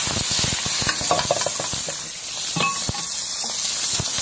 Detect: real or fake real